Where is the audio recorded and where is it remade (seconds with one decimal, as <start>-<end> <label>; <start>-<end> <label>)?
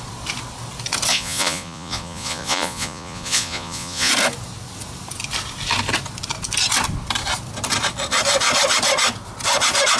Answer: 0.0-1.1 recorded; 1.1-4.1 remade; 4.1-10.0 recorded